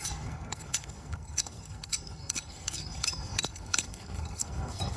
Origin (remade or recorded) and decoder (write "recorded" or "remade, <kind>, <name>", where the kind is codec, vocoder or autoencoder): remade, codec, SNAC